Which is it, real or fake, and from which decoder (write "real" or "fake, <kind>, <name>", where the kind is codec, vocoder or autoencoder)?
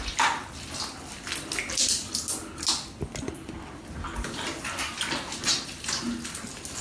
real